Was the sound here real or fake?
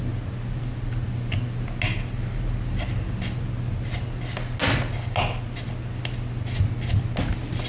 real